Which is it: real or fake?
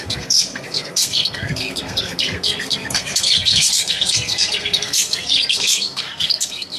fake